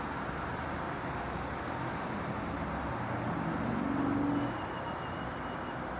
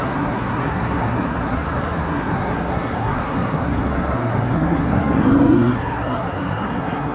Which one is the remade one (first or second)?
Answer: second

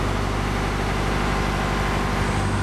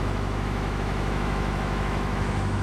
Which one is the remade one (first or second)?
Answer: second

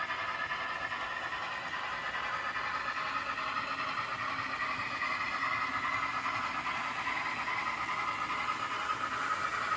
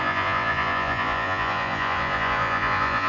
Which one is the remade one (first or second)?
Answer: second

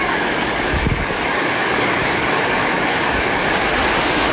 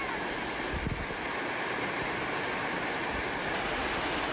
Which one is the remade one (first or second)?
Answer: first